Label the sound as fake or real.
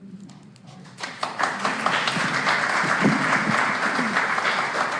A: real